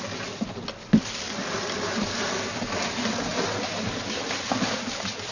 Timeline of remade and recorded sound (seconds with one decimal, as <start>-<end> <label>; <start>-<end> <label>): 0.0-5.3 recorded